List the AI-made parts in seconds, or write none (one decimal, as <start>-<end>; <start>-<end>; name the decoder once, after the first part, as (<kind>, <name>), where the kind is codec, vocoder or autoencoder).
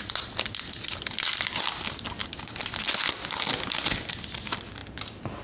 none